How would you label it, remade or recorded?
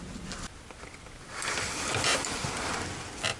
recorded